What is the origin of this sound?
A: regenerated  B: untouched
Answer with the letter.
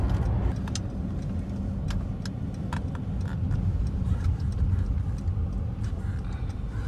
B